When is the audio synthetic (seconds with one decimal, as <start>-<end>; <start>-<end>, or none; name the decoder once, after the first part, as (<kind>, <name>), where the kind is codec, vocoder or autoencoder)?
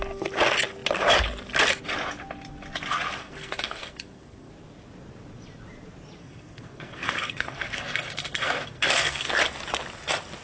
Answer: 3.2-4.5 (codec, SNAC); 6.2-9.3